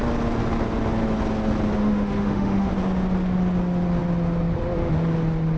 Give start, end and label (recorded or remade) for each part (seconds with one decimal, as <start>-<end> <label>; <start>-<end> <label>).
0.0-1.8 recorded; 1.8-2.7 remade; 2.7-5.6 recorded